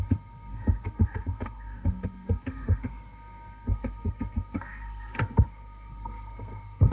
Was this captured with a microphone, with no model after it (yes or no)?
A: no